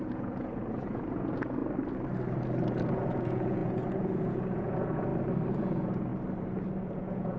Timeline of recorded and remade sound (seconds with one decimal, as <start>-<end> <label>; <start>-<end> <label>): 0.0-1.6 remade; 1.6-2.7 recorded; 2.7-5.1 remade; 5.1-5.6 recorded; 5.6-6.1 remade; 6.1-6.8 recorded; 6.8-7.4 remade